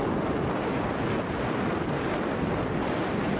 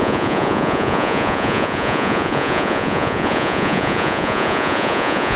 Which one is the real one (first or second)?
first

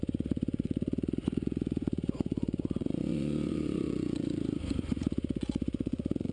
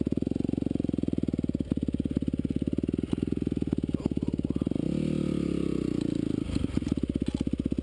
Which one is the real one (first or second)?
second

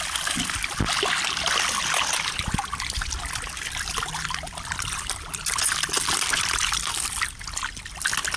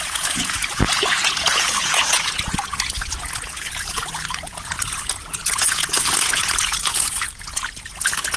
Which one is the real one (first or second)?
first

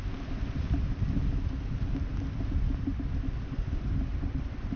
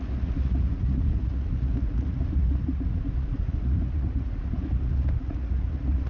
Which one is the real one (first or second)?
first